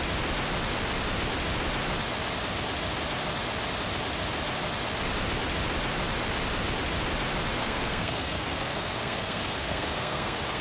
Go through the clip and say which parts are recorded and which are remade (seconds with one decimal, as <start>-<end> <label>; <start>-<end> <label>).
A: 0.0-7.6 recorded; 7.6-10.6 remade